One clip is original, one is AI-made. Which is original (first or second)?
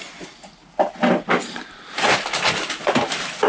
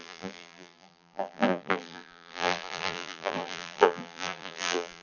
first